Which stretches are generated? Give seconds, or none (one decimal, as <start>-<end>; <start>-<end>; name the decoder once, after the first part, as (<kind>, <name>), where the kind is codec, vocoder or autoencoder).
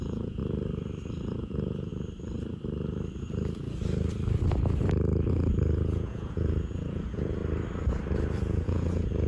0.0-0.4 (vocoder, Vocos); 1.4-1.9; 5.3-7.4; 8.4-9.3